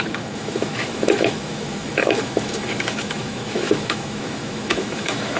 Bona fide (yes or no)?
no